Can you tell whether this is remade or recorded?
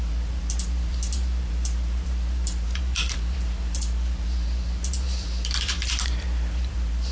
remade